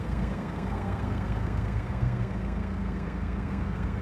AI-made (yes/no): yes